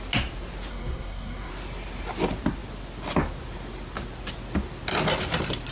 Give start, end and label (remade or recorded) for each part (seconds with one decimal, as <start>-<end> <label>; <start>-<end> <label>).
0.0-0.7 recorded; 0.7-1.5 remade; 1.5-5.7 recorded